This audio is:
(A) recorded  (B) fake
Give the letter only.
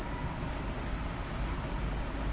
A